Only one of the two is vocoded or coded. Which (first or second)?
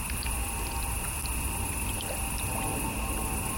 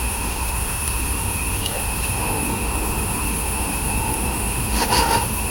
second